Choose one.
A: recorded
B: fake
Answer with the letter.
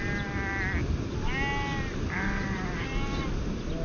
A